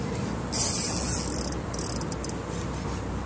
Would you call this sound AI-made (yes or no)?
no